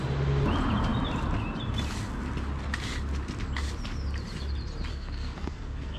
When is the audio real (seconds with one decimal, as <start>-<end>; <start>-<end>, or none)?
0.0-4.9